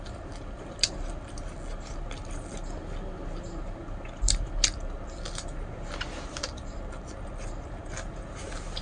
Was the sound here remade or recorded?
recorded